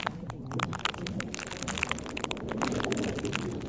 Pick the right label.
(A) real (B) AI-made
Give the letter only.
A